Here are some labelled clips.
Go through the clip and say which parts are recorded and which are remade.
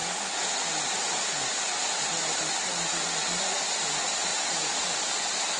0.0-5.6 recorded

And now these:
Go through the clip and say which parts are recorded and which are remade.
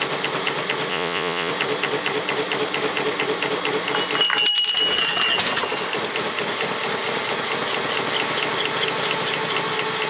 0.0-0.9 recorded; 0.9-1.5 remade; 1.5-10.1 recorded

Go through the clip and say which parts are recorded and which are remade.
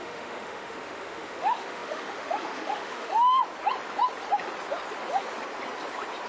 0.0-3.4 remade; 3.4-6.3 recorded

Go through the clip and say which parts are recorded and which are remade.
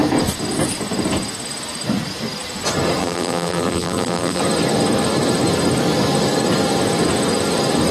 0.0-3.0 recorded; 3.0-4.4 remade; 4.4-7.9 recorded